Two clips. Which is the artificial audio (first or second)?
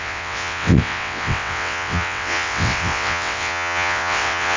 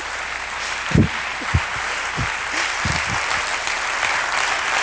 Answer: first